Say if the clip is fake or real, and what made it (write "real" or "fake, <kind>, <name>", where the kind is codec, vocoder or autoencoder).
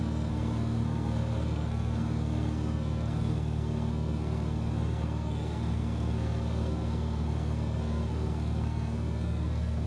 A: fake, codec, SNAC